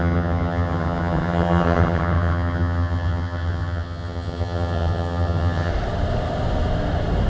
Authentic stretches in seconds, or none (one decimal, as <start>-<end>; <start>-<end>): 5.7-7.3